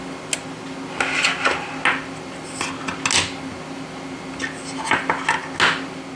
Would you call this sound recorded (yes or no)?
yes